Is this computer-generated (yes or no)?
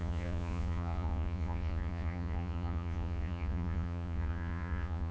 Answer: yes